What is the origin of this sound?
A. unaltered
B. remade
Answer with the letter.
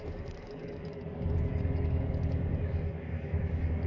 B